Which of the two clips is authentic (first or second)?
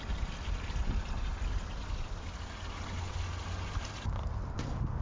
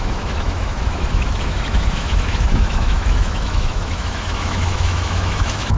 first